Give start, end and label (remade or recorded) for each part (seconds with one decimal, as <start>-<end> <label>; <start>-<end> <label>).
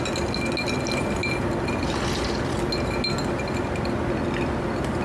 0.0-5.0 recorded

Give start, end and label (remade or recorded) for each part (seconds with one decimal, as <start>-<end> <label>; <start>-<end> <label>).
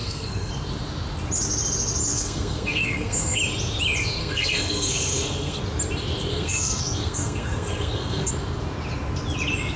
0.0-0.5 remade; 0.5-2.1 recorded; 2.1-3.4 remade; 3.4-4.2 recorded; 4.2-5.6 remade; 5.6-6.3 recorded; 6.3-8.3 remade; 8.3-9.8 recorded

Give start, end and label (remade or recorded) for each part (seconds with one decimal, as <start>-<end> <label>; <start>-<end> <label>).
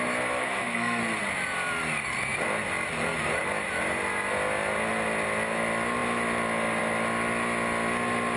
0.0-0.4 recorded; 0.4-1.0 remade; 1.0-8.4 recorded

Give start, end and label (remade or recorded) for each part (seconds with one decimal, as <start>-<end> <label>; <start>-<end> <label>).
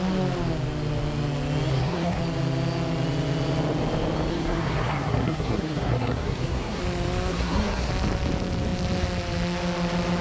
0.0-1.7 recorded; 1.7-2.2 remade; 2.2-4.3 recorded; 4.3-6.8 remade; 6.8-7.3 recorded; 7.3-7.9 remade; 7.9-10.2 recorded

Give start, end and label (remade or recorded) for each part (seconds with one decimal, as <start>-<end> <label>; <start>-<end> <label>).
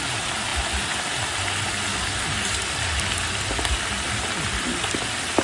0.0-5.4 recorded